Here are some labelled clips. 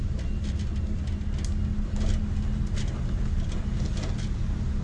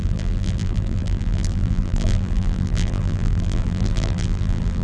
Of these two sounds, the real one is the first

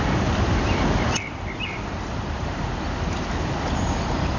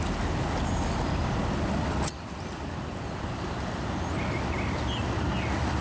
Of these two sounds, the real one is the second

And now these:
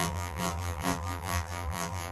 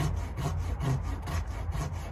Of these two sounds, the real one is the second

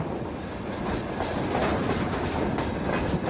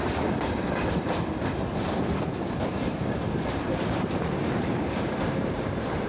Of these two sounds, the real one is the first